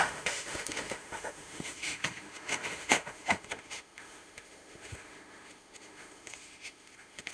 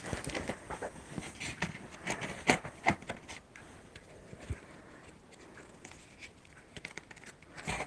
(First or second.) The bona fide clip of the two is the second